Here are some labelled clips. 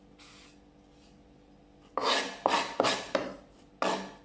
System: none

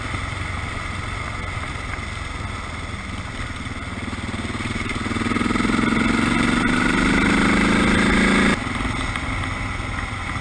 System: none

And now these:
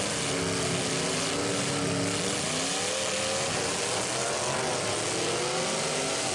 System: none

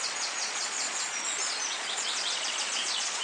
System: vocoder, Vocos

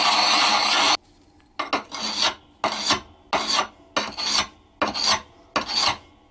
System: none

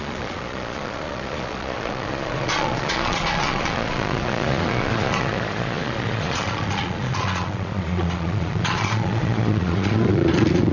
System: vocoder, Vocos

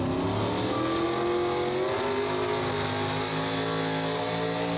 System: none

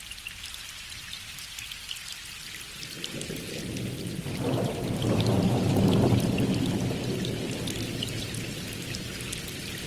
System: none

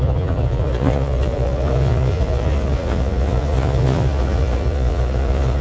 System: vocoder, Vocos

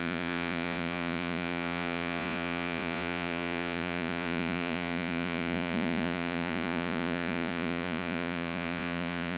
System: vocoder, Vocos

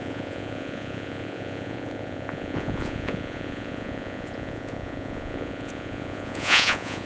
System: vocoder, Vocos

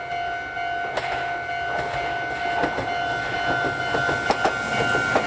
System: none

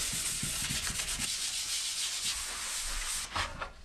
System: vocoder, Vocos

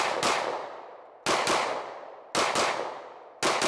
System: none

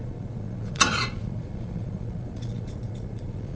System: vocoder, Vocos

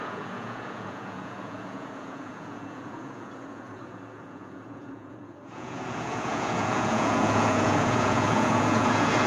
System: vocoder, Vocos